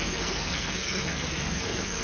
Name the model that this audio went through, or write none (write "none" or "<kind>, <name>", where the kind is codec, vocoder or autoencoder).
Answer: codec, SNAC